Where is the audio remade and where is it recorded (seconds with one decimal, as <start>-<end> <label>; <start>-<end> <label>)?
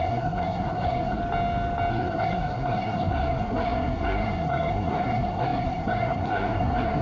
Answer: 0.0-1.2 remade; 1.2-1.9 recorded; 1.9-7.0 remade